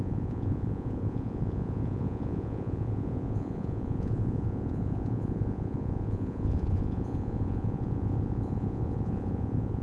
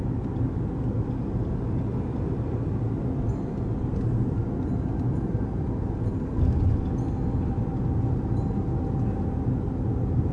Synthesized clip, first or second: first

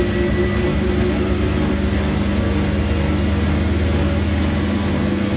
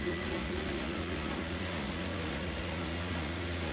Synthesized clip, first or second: second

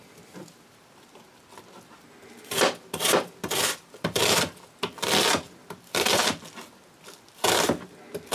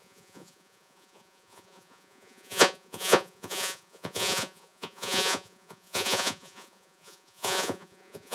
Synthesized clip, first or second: second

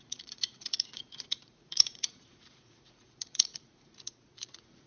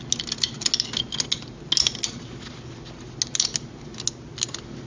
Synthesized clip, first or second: first